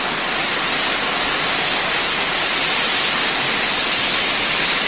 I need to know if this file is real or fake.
real